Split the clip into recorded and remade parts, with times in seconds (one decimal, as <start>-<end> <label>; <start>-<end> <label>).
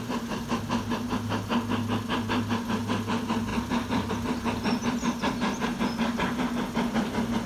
0.0-3.5 recorded; 3.5-4.1 remade; 4.1-7.5 recorded